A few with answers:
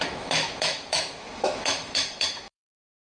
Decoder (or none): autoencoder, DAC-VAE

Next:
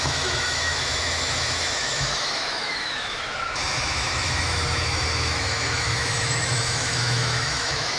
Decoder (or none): autoencoder, DAC-VAE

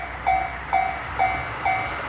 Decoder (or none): none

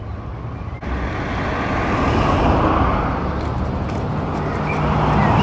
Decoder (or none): none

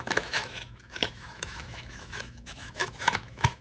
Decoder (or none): autoencoder, DAC-VAE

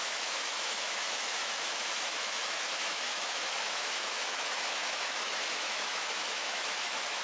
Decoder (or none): autoencoder, DAC-VAE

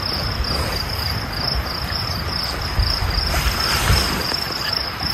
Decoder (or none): none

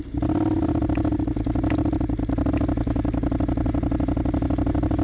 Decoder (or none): none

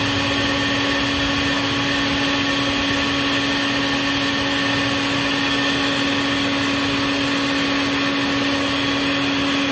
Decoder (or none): none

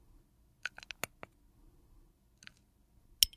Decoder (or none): none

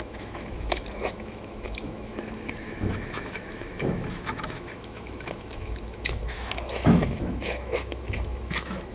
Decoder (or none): autoencoder, DAC-VAE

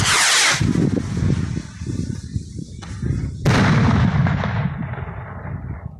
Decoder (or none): none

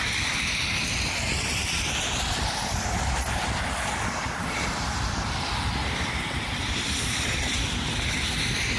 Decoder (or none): none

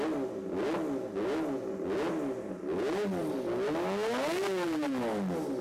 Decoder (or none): none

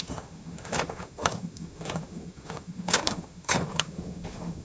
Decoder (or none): autoencoder, DAC-VAE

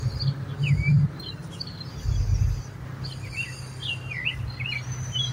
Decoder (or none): none